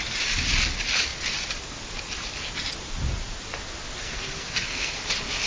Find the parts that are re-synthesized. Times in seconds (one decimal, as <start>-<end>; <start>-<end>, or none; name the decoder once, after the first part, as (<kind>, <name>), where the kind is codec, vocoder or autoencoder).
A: 4.0-5.0 (codec, SNAC)